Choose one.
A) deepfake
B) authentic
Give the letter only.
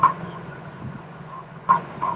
A